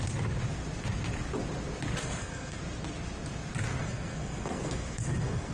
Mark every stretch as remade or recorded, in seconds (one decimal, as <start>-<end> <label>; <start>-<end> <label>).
0.0-2.0 recorded; 2.0-2.6 remade; 2.6-3.8 recorded; 3.8-5.5 remade